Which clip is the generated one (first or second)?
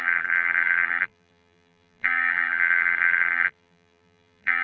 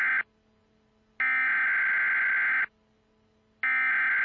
first